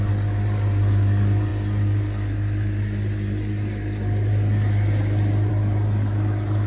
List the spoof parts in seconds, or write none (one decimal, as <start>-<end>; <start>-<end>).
none